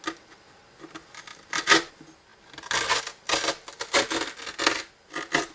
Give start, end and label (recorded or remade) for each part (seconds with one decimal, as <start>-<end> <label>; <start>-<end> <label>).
0.0-5.5 recorded